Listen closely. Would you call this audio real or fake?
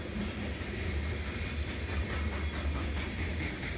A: real